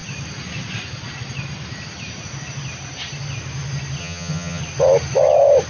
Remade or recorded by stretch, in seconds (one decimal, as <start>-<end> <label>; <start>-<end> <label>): 0.0-4.0 recorded; 4.0-4.6 remade; 4.6-5.7 recorded